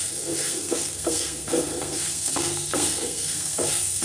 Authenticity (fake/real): fake